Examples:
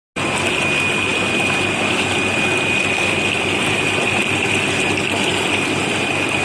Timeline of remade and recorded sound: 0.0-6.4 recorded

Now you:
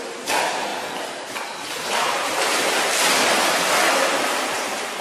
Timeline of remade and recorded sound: 0.0-5.0 recorded

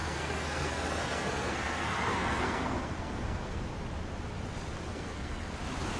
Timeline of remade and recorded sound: 0.0-3.6 remade; 3.6-4.9 recorded; 4.9-5.5 remade; 5.5-6.0 recorded

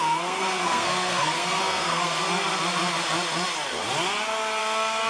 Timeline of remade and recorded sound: 0.0-2.2 remade; 2.2-4.6 recorded; 4.6-5.1 remade